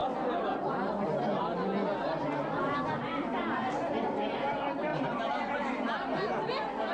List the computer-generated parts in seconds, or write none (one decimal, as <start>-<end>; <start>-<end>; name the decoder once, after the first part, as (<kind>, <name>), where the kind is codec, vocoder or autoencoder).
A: 4.9-6.5 (vocoder, BigVGAN v2)